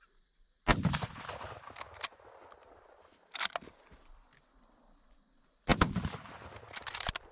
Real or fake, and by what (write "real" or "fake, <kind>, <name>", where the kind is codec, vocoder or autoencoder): real